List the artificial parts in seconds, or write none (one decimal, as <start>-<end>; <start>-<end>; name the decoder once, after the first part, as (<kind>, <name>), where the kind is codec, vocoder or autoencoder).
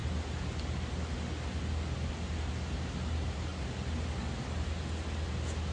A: none